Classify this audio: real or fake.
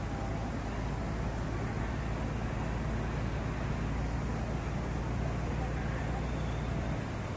real